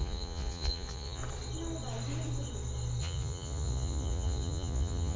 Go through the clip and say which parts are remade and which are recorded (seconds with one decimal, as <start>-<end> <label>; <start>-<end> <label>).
0.0-1.2 remade; 1.2-3.0 recorded; 3.0-5.2 remade